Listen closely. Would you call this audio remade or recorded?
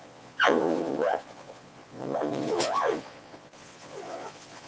remade